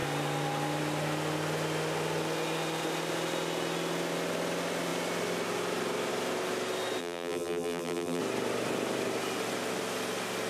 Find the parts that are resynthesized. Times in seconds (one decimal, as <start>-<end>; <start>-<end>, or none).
7.0-8.2